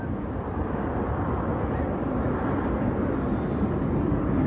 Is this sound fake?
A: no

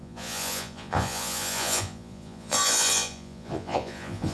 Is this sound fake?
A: yes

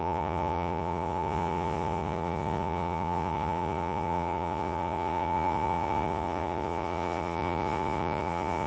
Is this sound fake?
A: yes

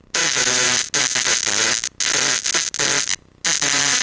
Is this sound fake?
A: no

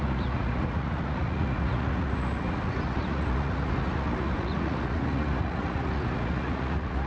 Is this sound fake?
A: yes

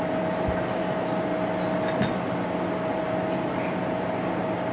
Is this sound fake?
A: no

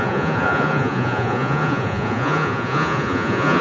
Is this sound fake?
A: yes